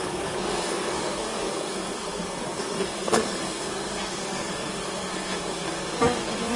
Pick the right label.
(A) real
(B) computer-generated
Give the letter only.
B